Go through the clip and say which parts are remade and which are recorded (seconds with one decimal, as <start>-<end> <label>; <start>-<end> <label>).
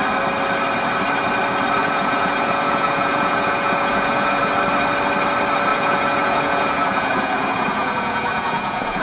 0.0-1.8 recorded; 1.8-4.5 remade; 4.5-5.7 recorded; 5.7-9.0 remade